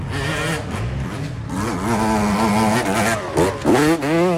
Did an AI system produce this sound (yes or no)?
no